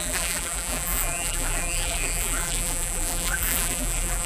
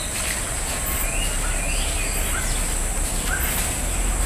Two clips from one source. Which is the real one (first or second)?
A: second